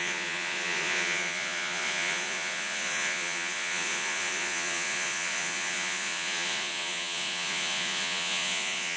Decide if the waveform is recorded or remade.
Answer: remade